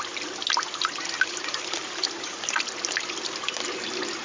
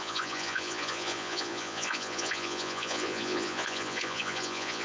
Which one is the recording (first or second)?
first